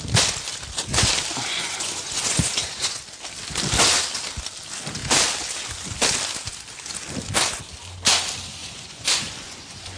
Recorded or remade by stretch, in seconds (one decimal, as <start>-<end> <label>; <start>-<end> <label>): 0.0-1.5 recorded; 1.5-3.0 remade; 3.0-8.6 recorded; 8.6-10.0 remade